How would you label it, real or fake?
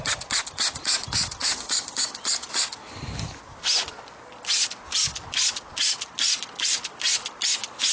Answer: real